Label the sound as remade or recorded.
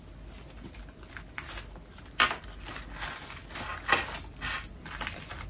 recorded